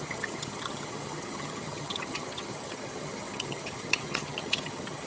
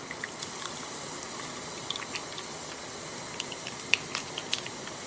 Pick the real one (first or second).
second